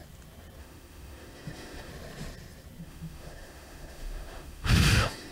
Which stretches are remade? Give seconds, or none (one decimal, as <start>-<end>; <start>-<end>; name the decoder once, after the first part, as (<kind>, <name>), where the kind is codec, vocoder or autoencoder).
0.6-1.9 (autoencoder, DAC-VAE); 2.8-5.3